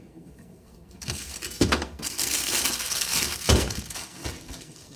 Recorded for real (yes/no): no